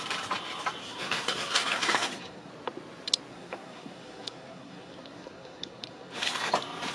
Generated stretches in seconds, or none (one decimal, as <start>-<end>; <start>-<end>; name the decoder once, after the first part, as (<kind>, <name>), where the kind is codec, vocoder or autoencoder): 0.8-2.5 (codec, SNAC); 3.3-6.5